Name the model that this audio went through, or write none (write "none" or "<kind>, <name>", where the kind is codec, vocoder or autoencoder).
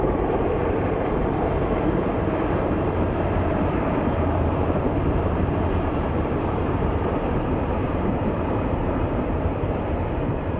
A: vocoder, BigVGAN v2